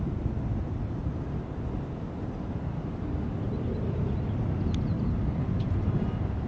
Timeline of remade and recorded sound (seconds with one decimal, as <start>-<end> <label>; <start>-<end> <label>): 0.0-6.5 recorded